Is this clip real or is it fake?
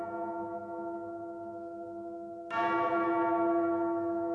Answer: real